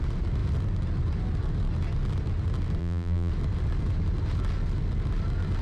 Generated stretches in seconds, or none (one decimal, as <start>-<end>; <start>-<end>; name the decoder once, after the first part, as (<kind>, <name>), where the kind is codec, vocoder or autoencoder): 2.8-3.3 (vocoder, BigVGAN v2)